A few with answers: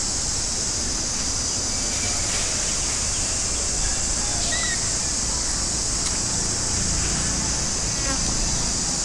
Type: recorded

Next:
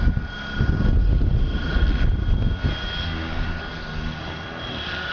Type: recorded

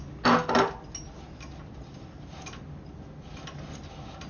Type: recorded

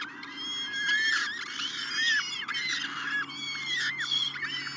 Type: recorded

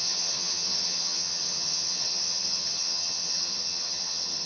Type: remade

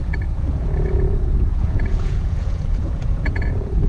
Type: remade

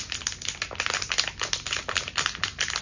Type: recorded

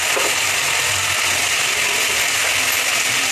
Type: recorded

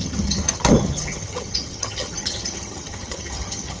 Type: remade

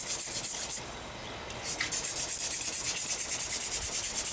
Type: recorded